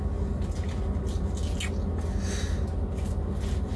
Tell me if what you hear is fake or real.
real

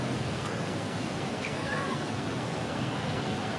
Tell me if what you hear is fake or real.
fake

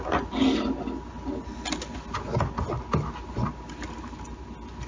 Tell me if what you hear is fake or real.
real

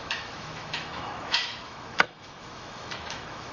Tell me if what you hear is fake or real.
fake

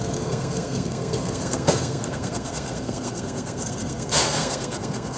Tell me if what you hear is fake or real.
fake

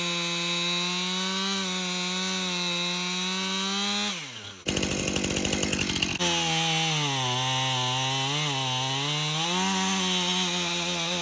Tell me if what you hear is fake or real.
real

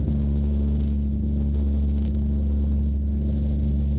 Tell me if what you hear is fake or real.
real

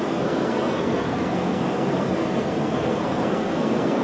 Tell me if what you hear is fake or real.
fake